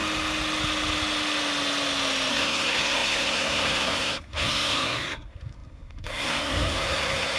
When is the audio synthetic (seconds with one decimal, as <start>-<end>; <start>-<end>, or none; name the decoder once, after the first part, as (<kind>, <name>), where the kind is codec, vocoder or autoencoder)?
2.3-7.4 (codec, SNAC)